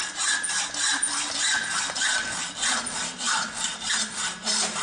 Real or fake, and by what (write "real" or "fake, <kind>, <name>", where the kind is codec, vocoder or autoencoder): real